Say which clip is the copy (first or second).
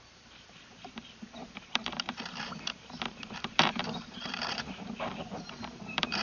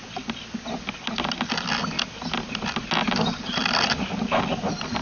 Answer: first